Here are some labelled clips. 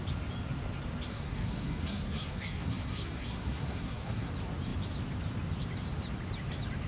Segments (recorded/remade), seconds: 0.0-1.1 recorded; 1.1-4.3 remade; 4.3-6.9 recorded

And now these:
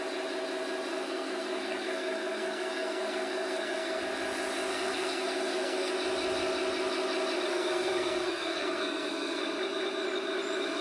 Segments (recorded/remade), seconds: 0.0-0.9 recorded; 0.9-4.0 remade; 4.0-4.7 recorded; 4.7-5.9 remade; 5.9-7.5 recorded; 7.5-9.4 remade; 9.4-10.8 recorded